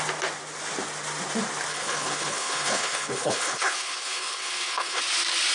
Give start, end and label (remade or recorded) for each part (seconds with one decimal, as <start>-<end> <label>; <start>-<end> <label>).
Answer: 0.0-1.7 recorded; 1.7-5.0 remade; 5.0-5.5 recorded